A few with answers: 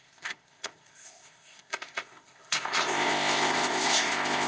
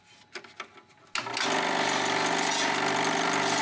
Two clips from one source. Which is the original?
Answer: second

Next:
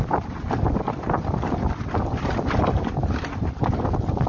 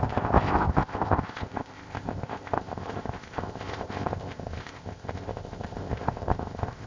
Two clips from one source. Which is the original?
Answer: first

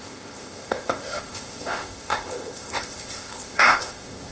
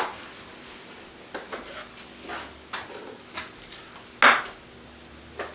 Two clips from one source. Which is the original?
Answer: second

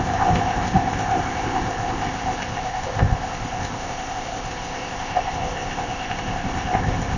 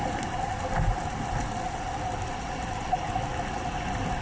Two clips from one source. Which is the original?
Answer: second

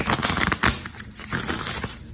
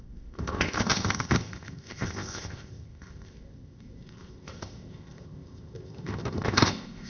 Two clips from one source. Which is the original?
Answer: first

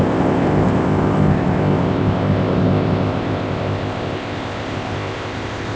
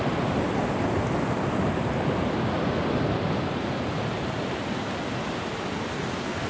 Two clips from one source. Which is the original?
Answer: second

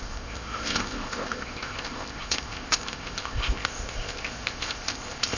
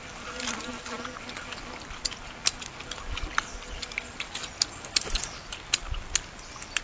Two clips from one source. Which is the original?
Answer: second